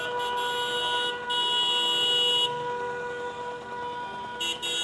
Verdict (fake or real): real